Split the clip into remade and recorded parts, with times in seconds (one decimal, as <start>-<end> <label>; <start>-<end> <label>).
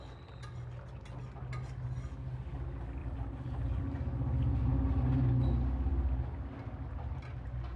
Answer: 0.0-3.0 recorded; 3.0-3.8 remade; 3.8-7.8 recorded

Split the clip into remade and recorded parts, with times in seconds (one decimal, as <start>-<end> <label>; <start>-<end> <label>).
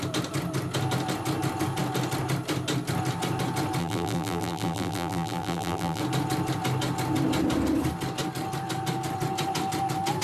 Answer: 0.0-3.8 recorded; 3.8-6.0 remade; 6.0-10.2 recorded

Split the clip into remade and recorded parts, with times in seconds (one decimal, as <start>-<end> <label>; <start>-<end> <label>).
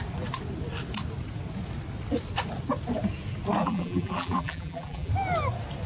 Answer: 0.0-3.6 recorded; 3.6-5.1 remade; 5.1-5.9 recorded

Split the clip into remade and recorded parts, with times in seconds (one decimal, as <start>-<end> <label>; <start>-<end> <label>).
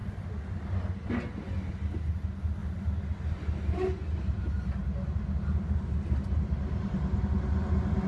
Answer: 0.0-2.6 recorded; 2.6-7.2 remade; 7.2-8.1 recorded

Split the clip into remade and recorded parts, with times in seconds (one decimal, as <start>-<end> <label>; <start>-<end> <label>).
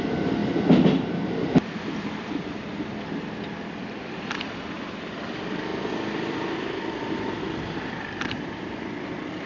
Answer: 0.0-0.4 recorded; 0.4-2.8 remade; 2.8-5.7 recorded; 5.7-8.8 remade; 8.8-9.5 recorded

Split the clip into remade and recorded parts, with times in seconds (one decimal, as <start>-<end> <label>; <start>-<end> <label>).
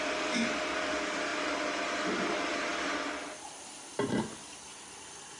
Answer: 0.0-1.3 remade; 1.3-2.3 recorded; 2.3-2.7 remade; 2.7-3.7 recorded; 3.7-5.4 remade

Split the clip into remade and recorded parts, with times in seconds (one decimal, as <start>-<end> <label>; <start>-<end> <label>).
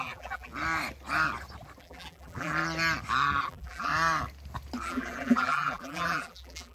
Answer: 0.0-0.5 remade; 0.5-1.8 recorded; 1.8-2.5 remade; 2.5-3.4 recorded; 3.4-3.9 remade; 3.9-4.8 recorded; 4.8-6.7 remade